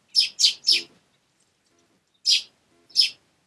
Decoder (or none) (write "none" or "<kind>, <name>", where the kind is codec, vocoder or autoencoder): none